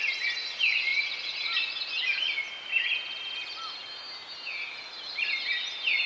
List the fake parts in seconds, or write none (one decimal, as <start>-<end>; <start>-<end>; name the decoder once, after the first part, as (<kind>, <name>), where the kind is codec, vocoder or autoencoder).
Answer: none